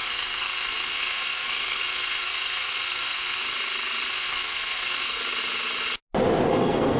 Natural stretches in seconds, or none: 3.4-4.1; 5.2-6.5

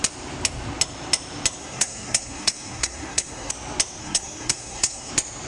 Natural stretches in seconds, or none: 0.0-1.6; 3.5-4.0; 5.1-5.5

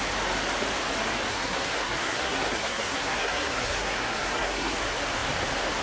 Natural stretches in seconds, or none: 0.0-1.3; 4.8-5.8

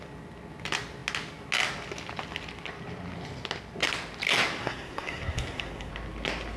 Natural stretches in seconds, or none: 0.0-4.6; 5.9-6.6

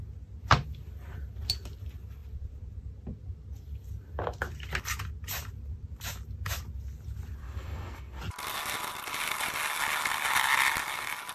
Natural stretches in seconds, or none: 0.0-7.4; 8.2-11.3